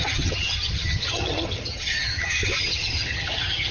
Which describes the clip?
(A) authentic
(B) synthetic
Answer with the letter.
B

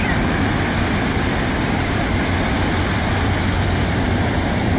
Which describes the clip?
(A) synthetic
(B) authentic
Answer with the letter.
A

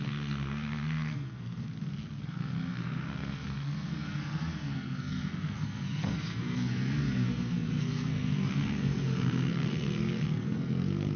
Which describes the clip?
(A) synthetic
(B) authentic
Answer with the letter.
A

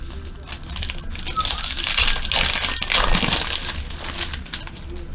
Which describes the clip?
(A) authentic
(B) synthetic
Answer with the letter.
A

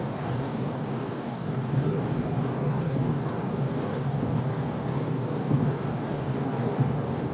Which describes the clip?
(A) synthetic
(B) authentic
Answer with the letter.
A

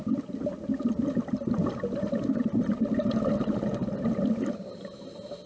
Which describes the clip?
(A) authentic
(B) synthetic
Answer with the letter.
A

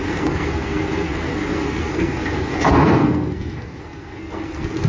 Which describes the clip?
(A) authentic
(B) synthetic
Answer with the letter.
B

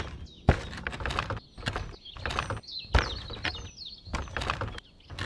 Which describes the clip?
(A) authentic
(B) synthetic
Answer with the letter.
A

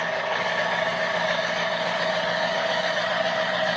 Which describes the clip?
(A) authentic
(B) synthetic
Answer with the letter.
B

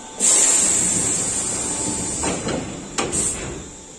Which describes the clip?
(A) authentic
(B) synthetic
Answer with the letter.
A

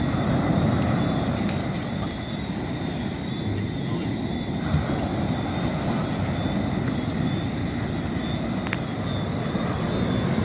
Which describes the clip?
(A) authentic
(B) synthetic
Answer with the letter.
A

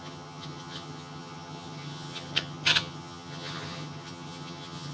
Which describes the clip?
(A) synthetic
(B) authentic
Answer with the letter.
A